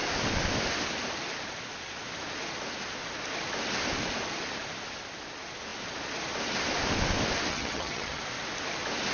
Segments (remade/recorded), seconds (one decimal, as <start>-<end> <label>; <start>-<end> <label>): 0.0-7.5 recorded; 7.5-8.2 remade; 8.2-9.1 recorded